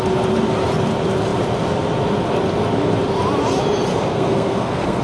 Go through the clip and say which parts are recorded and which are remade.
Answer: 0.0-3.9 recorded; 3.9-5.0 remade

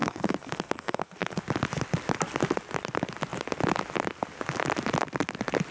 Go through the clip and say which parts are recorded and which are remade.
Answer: 0.0-1.4 remade; 1.4-5.7 recorded

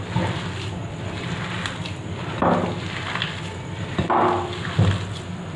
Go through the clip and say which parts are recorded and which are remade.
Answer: 0.0-5.6 recorded

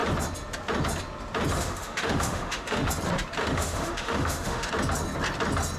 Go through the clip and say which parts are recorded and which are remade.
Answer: 0.0-1.5 recorded; 1.5-2.9 remade; 2.9-3.4 recorded; 3.4-4.7 remade; 4.7-5.8 recorded